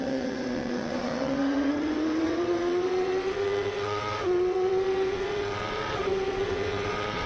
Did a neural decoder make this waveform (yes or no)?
yes